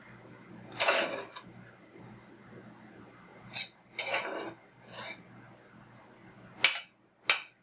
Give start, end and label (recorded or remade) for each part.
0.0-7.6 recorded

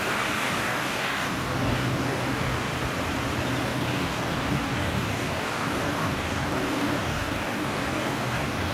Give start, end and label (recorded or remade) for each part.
0.0-2.7 remade; 2.7-3.6 recorded; 3.6-8.7 remade

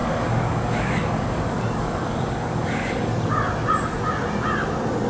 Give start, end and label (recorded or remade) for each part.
0.0-3.1 remade; 3.1-5.1 recorded

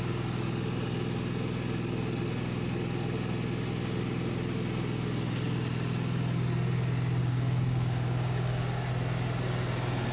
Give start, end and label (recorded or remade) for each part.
0.0-7.2 recorded; 7.2-8.9 remade; 8.9-10.1 recorded

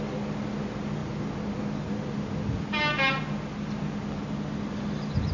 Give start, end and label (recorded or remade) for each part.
0.0-5.3 recorded

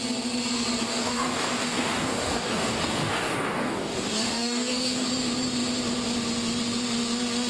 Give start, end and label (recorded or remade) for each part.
0.0-0.8 recorded; 0.8-5.1 remade; 5.1-7.5 recorded

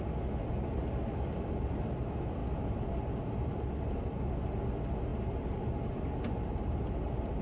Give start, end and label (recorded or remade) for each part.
0.0-7.4 recorded

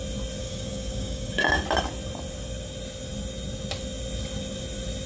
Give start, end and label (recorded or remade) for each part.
0.0-0.4 recorded; 0.4-1.5 remade; 1.5-5.1 recorded